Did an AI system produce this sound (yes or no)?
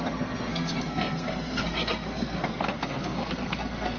yes